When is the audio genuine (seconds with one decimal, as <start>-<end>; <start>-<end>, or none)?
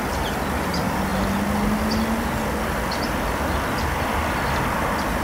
1.1-4.2